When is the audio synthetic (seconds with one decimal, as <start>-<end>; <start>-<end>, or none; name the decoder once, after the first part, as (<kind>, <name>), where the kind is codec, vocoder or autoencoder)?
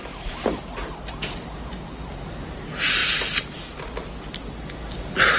none